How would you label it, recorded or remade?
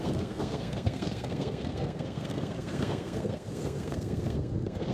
remade